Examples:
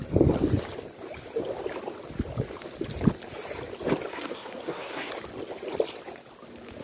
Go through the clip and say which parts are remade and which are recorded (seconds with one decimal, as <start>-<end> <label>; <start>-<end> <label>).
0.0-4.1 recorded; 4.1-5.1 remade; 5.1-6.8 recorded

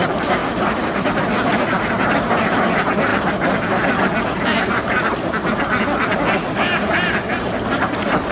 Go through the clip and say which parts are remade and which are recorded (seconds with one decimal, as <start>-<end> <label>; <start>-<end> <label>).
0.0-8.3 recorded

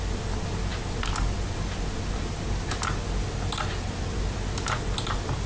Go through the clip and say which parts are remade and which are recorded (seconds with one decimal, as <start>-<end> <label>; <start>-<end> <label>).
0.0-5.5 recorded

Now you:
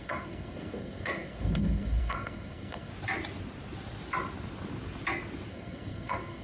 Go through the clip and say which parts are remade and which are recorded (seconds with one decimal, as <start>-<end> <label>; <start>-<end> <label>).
0.0-2.9 remade; 2.9-5.5 recorded; 5.5-6.4 remade